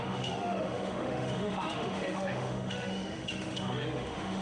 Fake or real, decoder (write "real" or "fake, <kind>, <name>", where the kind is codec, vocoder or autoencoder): fake, autoencoder, DAC-VAE